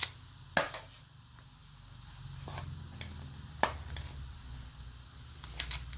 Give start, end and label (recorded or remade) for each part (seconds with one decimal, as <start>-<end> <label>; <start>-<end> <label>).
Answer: 0.0-6.0 recorded